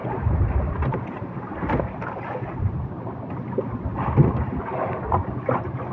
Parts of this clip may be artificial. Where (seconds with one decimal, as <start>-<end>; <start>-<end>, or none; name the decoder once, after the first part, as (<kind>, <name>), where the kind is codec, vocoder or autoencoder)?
0.0-3.3 (vocoder, BigVGAN v2)